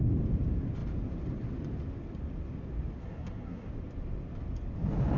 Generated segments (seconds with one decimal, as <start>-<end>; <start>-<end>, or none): 3.0-3.7

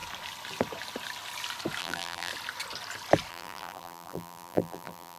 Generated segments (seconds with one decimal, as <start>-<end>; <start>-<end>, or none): 1.8-2.3; 3.3-5.2

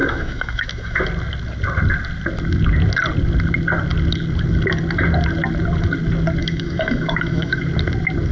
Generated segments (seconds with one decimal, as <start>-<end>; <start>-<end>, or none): 0.0-1.0; 6.4-7.6

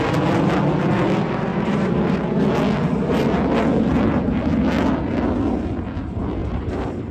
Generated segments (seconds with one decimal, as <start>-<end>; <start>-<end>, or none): 1.5-2.2; 6.4-7.1